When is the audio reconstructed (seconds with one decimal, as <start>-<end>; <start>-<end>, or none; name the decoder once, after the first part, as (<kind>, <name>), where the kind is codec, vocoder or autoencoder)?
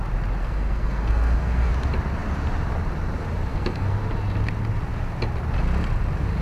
0.4-1.7 (codec, SNAC); 3.5-4.0